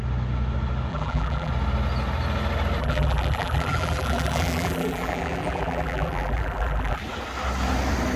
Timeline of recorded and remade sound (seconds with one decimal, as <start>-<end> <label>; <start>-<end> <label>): 0.0-0.9 recorded; 0.9-1.5 remade; 1.5-2.8 recorded; 2.8-7.0 remade; 7.0-8.2 recorded